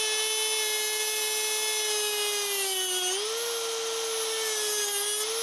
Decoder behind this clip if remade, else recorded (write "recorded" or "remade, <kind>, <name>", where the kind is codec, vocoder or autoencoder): recorded